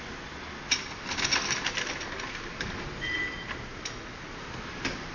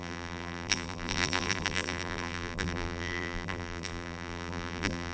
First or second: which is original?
first